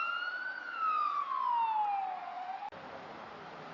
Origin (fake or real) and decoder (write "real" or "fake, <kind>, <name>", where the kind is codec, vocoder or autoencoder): real